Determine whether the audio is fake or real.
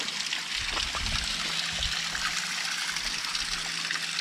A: real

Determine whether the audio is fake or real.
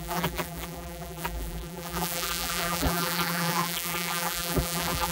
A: fake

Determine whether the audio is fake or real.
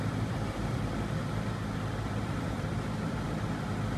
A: fake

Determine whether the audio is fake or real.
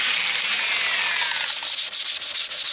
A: real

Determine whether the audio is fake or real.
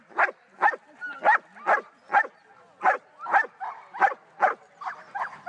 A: real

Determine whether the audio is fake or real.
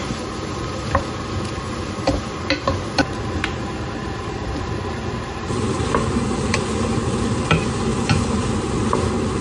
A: fake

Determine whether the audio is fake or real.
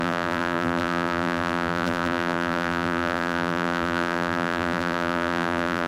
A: fake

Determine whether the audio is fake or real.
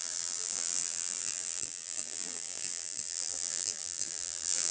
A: fake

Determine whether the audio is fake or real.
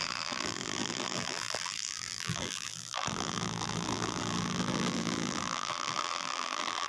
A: fake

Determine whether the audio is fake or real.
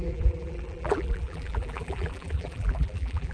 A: fake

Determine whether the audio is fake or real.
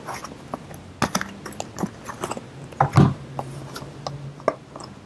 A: real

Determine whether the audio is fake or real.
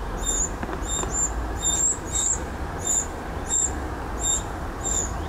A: real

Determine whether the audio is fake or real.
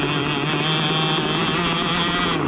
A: real